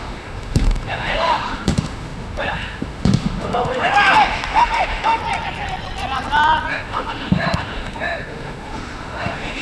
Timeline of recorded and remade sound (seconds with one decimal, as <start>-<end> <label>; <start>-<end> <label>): 0.0-5.2 remade; 5.2-6.7 recorded; 6.7-9.6 remade

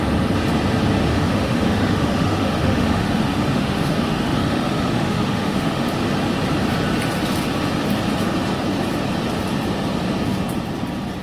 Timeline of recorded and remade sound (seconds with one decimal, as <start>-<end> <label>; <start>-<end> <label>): 0.0-1.1 recorded; 1.1-5.8 remade; 5.8-11.2 recorded

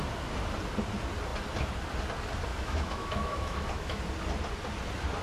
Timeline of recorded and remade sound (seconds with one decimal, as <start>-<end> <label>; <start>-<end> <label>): 0.0-2.5 recorded; 2.5-4.0 remade; 4.0-5.2 recorded

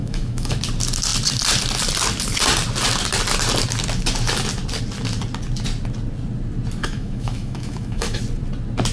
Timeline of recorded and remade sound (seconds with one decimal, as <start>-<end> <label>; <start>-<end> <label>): 0.0-0.6 remade; 0.6-6.8 recorded; 6.8-8.2 remade; 8.2-8.9 recorded

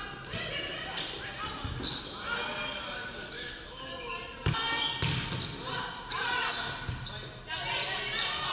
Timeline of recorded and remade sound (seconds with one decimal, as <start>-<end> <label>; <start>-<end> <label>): 0.0-3.2 recorded; 3.2-3.9 remade; 3.9-8.5 recorded

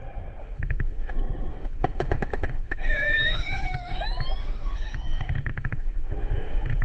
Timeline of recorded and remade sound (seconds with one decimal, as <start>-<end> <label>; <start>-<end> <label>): 0.0-0.4 recorded; 0.4-1.1 remade; 1.1-1.5 recorded; 1.5-4.0 remade; 4.0-4.4 recorded; 4.4-6.8 remade